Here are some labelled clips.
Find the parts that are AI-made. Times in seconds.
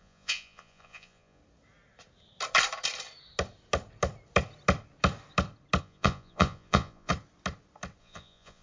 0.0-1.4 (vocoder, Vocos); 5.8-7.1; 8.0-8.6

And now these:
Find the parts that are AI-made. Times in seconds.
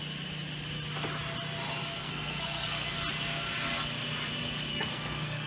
2.0-2.9 (codec, SNAC); 4.7-5.5